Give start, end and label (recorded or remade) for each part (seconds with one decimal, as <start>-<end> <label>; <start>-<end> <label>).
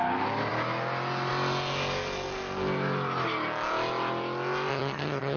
0.0-4.7 recorded; 4.7-5.4 remade